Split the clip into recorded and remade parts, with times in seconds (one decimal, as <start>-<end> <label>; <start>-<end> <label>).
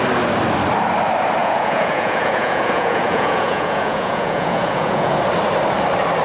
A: 0.0-1.4 recorded; 1.4-5.1 remade; 5.1-6.2 recorded